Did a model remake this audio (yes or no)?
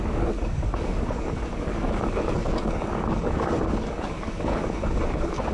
yes